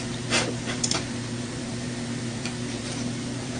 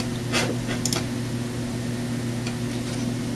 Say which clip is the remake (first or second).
first